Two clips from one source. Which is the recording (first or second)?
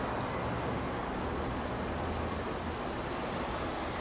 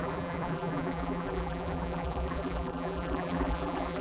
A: first